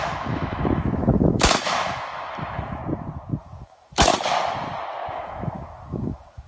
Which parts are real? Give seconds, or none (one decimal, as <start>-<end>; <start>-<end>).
2.8-3.4; 4.1-5.1